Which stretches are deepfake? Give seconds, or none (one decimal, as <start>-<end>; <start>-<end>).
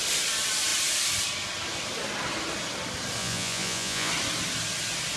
3.2-4.1